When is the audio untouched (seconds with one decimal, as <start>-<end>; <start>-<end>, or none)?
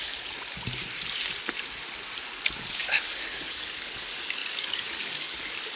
0.0-2.6